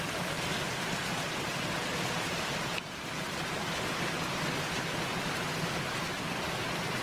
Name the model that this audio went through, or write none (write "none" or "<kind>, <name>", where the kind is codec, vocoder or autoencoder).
none